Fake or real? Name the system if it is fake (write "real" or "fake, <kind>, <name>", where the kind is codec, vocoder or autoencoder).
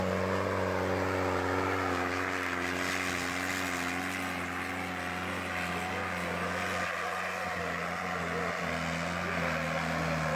real